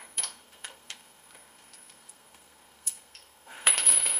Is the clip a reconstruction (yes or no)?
yes